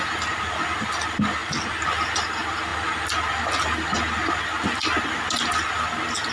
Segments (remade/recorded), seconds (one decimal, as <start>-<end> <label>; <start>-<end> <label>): 0.0-6.3 recorded